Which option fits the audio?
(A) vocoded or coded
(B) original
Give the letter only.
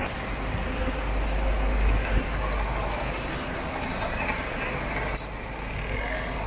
B